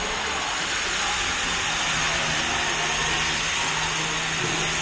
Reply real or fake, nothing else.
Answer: real